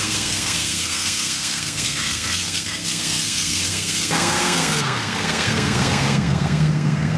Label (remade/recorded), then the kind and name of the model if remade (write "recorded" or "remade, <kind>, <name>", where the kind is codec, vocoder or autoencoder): remade, codec, SNAC